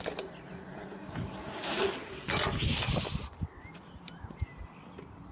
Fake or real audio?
real